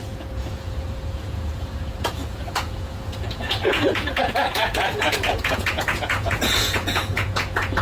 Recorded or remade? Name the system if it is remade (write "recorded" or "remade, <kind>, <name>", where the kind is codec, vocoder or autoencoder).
remade, vocoder, Vocos